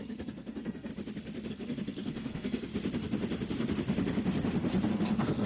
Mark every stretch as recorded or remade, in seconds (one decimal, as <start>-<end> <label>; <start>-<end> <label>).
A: 0.0-0.9 remade; 0.9-1.5 recorded; 1.5-2.7 remade; 2.7-4.9 recorded; 4.9-5.5 remade